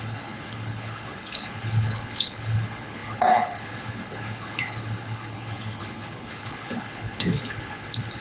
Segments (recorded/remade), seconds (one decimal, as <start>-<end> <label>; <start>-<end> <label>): 0.0-8.2 remade